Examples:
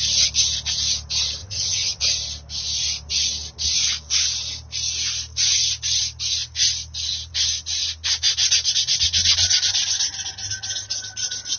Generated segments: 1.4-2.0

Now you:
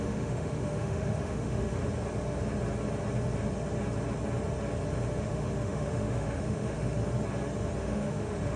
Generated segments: 0.0-1.8; 5.2-7.0; 7.8-8.6

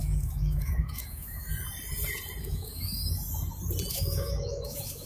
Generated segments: 0.0-1.5; 2.4-3.0; 3.9-5.1

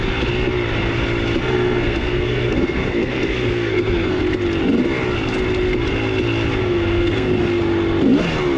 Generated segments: 1.4-4.2; 6.6-7.3

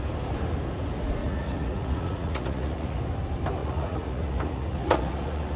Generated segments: 1.2-3.0; 3.6-5.6

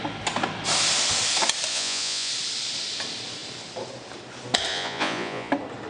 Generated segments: 1.7-2.3; 4.7-5.5

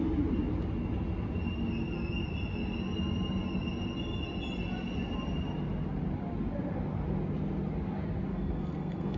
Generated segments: 8.3-9.2